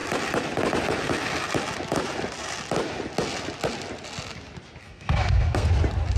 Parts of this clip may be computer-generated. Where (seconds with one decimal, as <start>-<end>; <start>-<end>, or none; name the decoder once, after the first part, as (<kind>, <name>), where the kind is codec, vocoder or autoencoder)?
4.8-5.7 (codec, SNAC)